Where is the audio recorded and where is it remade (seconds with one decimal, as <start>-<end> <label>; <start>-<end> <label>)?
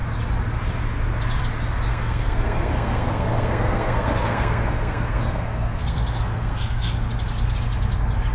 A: 0.0-1.9 recorded; 1.9-6.9 remade; 6.9-8.3 recorded